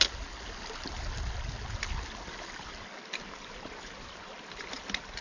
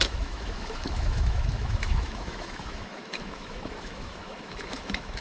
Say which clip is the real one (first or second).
first